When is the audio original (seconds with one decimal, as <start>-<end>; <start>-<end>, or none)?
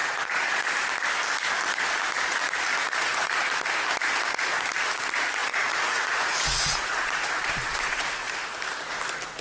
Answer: 0.7-2.7; 3.3-5.4; 8.3-9.4